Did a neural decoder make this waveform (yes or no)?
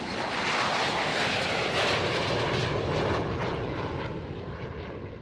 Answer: no